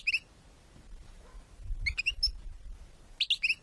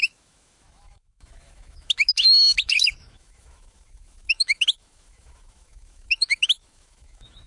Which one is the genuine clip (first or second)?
first